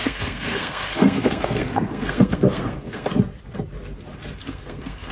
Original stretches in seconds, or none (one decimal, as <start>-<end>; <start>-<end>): 3.1-4.4